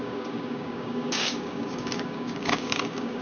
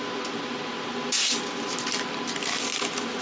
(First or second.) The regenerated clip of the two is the first